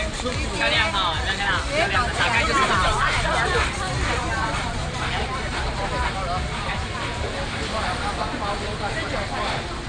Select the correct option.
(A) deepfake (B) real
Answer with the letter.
B